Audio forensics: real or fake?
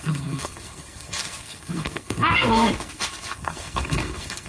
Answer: fake